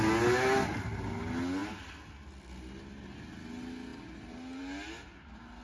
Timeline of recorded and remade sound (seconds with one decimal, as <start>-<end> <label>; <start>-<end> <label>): 0.0-5.6 recorded

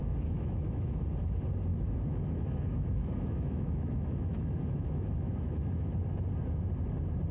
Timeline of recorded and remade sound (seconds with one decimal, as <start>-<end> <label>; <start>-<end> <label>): 0.0-1.0 remade; 1.0-1.7 recorded; 1.7-5.9 remade; 5.9-7.3 recorded

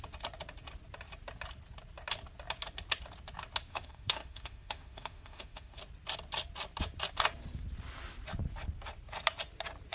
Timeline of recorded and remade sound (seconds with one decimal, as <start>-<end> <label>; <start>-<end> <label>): 0.0-3.7 recorded; 3.7-5.8 remade; 5.8-9.9 recorded

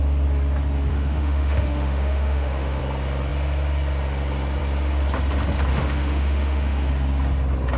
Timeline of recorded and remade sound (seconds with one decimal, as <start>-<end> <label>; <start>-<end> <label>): 0.0-0.9 recorded; 0.9-2.8 remade; 2.8-5.7 recorded; 5.7-6.9 remade; 6.9-7.8 recorded

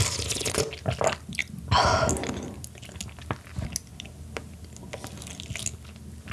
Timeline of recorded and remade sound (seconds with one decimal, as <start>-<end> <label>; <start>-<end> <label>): 0.0-6.3 recorded